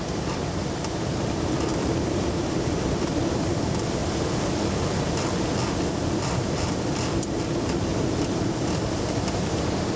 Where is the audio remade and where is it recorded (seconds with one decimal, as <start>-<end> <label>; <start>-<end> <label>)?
0.0-4.0 remade; 4.0-5.9 recorded; 5.9-7.9 remade; 7.9-9.1 recorded; 9.1-10.0 remade